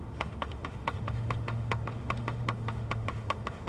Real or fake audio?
fake